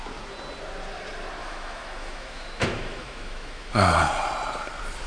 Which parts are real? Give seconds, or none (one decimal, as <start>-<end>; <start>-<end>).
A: 0.0-1.4; 3.7-5.1